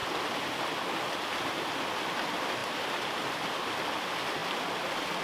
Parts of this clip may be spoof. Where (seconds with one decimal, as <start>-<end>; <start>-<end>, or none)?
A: 2.6-3.2